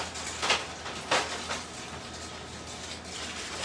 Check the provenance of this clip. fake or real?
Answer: real